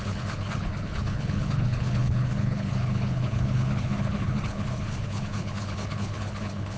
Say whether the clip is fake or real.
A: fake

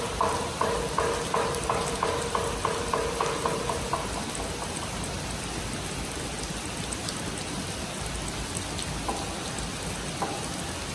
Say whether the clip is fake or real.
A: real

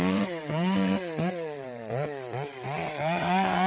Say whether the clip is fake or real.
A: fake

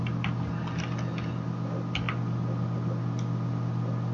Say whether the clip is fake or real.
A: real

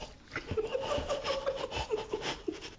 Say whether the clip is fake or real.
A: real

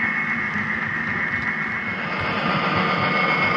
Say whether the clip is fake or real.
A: real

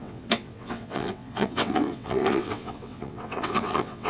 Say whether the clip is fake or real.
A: fake